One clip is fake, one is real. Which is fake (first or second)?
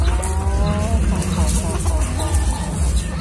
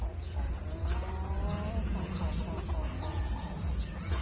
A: second